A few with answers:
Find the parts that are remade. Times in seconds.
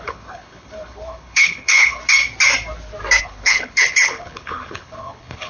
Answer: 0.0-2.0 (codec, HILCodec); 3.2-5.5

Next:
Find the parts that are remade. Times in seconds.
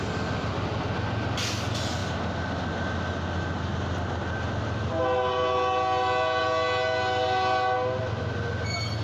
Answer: none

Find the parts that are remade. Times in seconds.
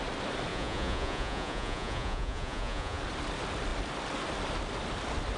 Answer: 0.5-3.0 (vocoder, Vocos)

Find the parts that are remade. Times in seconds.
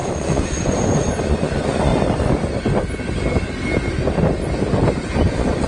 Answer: 0.0-1.9 (vocoder, Vocos); 5.3-5.7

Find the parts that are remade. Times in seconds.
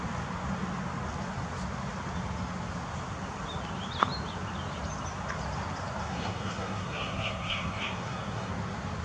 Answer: 6.0-8.5 (codec, SNAC)